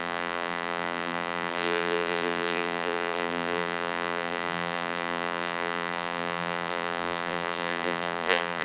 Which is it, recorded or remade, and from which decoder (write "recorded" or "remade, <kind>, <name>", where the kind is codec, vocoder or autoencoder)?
remade, vocoder, BigVGAN v2